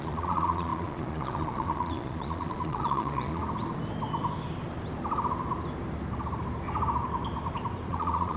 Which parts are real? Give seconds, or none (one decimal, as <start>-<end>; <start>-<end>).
3.4-7.9